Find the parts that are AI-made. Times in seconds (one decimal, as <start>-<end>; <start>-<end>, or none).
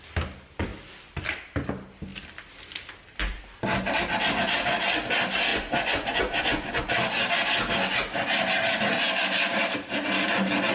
5.5-6.9